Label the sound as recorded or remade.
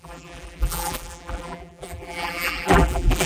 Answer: remade